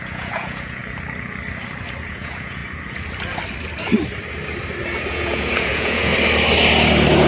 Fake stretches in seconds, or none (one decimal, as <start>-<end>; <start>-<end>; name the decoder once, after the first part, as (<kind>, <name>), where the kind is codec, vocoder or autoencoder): 0.0-0.8 (vocoder, Vocos); 2.1-2.6; 5.1-6.1